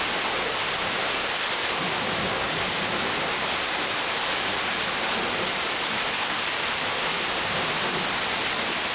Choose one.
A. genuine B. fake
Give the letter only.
A